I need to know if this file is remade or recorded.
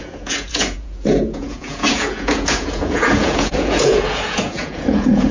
remade